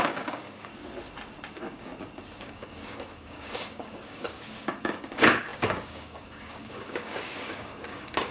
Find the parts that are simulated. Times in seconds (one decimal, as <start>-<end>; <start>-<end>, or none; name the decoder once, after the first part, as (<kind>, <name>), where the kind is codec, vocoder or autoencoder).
0.0-0.7 (codec, DAC); 1.5-1.9; 2.4-8.3